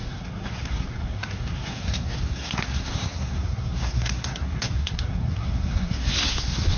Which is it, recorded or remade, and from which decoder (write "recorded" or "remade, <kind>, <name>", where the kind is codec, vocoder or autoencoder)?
remade, codec, SNAC